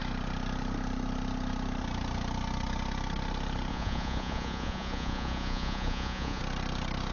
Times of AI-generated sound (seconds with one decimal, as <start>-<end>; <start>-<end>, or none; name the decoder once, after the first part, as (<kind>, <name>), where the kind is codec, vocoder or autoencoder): 3.7-6.4 (vocoder, Vocos)